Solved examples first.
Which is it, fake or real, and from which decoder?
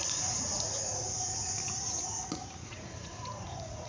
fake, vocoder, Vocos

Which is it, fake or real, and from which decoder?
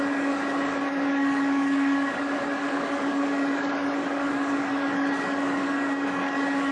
fake, codec, DAC